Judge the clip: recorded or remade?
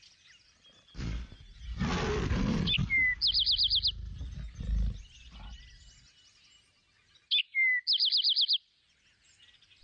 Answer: recorded